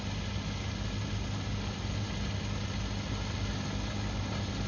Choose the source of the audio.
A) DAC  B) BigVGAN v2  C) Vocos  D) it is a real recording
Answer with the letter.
D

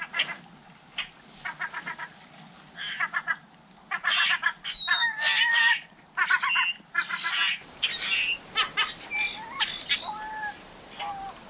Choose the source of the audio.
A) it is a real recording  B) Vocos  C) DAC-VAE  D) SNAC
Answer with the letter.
A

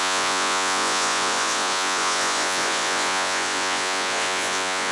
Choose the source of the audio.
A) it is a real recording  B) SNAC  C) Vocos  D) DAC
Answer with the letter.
C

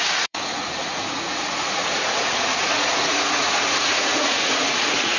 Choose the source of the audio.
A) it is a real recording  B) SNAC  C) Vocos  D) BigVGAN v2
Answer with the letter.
C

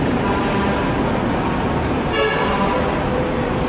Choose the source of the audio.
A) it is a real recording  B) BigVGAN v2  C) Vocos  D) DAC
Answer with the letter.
A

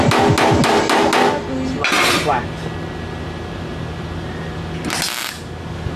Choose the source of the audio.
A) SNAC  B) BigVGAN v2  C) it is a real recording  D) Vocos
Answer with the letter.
C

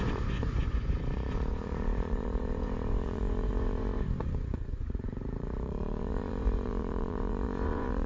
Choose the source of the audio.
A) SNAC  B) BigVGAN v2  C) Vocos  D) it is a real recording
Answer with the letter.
C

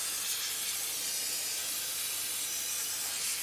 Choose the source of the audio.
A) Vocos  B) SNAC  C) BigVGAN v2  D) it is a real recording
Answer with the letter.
D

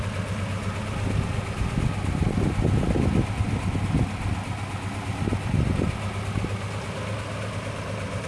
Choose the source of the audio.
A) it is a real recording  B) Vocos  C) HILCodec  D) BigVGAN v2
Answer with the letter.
A